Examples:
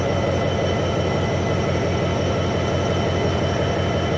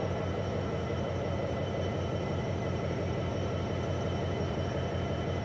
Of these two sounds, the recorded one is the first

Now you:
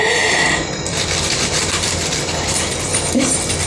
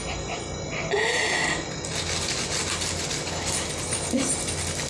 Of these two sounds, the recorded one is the second